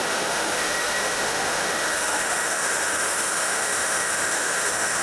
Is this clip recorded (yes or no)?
no